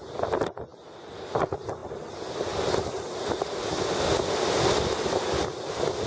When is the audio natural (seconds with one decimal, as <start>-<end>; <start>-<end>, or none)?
0.0-6.1